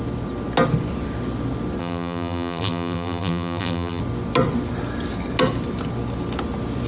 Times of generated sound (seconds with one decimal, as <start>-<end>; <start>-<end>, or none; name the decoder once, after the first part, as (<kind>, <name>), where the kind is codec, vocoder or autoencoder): 1.8-4.0 (vocoder, BigVGAN v2)